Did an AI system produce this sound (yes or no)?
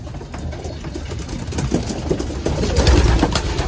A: no